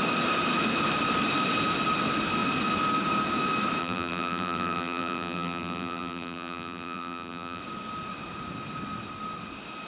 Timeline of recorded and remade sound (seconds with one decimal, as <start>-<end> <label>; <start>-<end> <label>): 0.0-3.8 recorded; 3.8-7.6 remade; 7.6-9.9 recorded